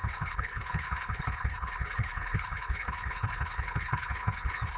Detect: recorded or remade remade